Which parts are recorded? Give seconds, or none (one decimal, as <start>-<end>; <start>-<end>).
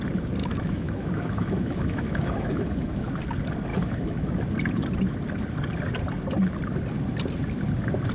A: 0.0-0.4; 3.1-3.7; 4.3-8.1